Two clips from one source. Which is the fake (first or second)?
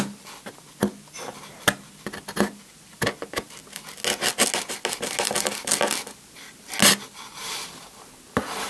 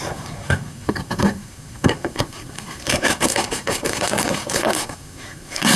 second